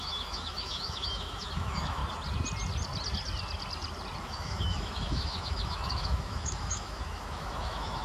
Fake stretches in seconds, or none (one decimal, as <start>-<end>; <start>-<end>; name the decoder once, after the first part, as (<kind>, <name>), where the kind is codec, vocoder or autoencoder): 0.0-2.0 (autoencoder, DAC-VAE); 4.2-8.0